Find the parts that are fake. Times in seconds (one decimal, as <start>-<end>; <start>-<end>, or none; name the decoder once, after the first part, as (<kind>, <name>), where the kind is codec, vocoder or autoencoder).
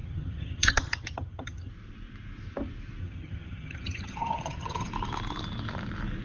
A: 0.0-1.7 (vocoder, HiFi-GAN); 3.0-4.9